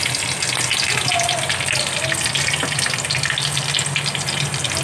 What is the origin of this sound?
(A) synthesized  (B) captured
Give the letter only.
B